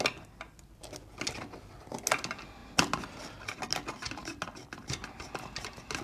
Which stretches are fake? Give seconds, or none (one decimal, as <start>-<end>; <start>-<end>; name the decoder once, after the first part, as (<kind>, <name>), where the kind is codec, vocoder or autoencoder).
none